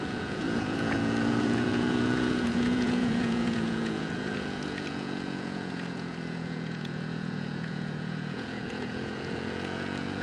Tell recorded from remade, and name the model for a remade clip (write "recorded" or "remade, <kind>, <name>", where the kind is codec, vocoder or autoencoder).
remade, vocoder, Vocos